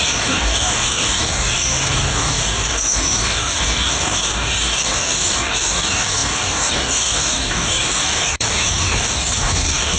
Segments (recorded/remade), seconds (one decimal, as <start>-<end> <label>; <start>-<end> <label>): 0.0-10.0 remade